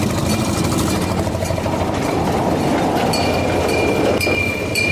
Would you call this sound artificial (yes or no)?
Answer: yes